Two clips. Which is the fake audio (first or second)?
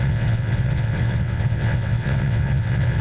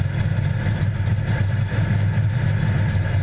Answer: first